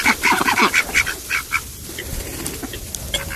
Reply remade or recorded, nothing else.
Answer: recorded